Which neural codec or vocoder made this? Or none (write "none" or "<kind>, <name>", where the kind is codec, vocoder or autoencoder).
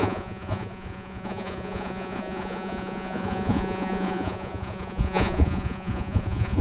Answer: vocoder, Vocos